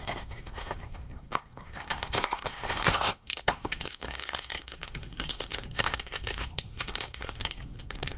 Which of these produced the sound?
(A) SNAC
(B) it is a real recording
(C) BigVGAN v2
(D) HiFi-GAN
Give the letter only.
A